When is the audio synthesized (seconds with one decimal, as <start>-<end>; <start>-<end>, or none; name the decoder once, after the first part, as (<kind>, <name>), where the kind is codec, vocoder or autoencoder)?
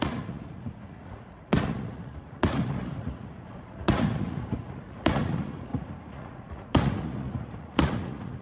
0.0-8.4 (vocoder, Vocos)